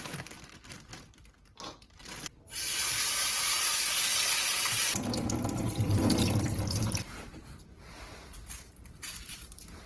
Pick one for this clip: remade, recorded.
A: remade